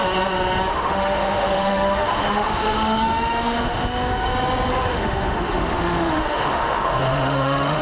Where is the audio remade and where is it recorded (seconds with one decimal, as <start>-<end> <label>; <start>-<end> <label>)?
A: 0.0-0.7 recorded; 0.7-4.3 remade; 4.3-4.7 recorded; 4.7-7.8 remade